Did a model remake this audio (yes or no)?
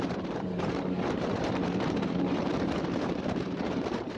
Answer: yes